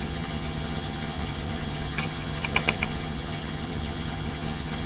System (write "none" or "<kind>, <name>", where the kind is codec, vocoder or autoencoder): vocoder, HiFi-GAN